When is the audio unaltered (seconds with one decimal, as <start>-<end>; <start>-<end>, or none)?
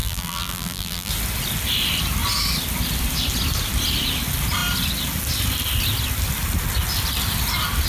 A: 1.1-7.9